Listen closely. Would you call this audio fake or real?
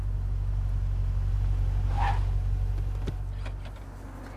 real